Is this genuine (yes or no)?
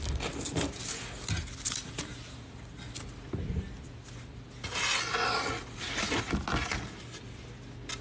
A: yes